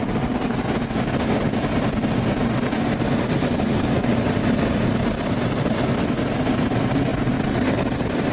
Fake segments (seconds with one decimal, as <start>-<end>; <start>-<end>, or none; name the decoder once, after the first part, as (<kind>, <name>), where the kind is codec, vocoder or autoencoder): none